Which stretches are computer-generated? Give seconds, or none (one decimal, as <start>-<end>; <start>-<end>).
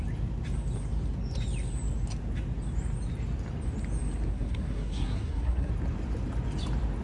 4.3-5.7